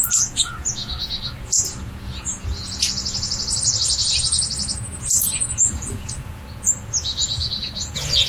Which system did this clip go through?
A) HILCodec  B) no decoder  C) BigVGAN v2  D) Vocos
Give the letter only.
D